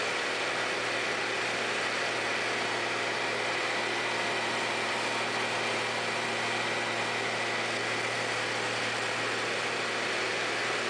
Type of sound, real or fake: real